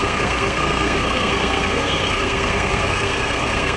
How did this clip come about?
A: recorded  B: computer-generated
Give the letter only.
B